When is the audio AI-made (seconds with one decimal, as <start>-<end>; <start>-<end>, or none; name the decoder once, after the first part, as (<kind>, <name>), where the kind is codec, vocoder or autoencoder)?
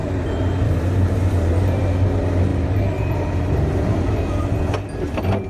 0.0-1.8 (vocoder, BigVGAN v2); 2.5-3.9